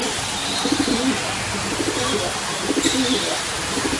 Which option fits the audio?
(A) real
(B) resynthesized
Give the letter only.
A